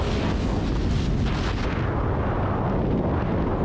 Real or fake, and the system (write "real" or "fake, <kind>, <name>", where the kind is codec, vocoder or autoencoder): real